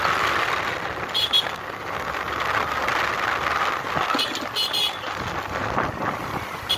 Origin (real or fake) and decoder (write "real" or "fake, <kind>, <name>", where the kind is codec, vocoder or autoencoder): real